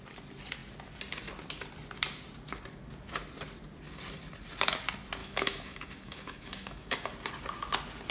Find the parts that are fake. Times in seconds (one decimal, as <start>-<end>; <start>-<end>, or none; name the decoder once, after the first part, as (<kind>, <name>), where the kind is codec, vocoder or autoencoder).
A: 5.2-7.1 (autoencoder, DAC-VAE)